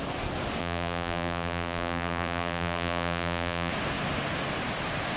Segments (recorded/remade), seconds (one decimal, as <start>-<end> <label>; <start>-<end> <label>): 0.0-0.6 recorded; 0.6-3.7 remade; 3.7-5.2 recorded